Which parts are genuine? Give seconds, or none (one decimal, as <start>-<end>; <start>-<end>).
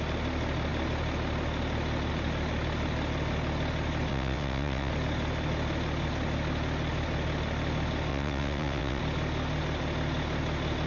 0.0-4.1; 4.9-8.1; 9.0-10.9